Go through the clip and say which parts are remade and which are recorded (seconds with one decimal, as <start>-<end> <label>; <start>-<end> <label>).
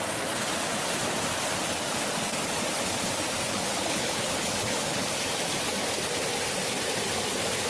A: 0.0-3.5 recorded; 3.5-5.1 remade; 5.1-7.7 recorded